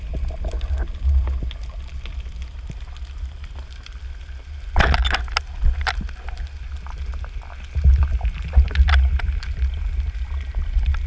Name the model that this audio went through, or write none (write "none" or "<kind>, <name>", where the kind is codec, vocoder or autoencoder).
none